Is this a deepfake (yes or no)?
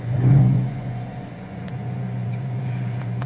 yes